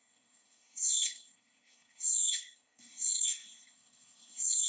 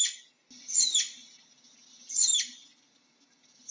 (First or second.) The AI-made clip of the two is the first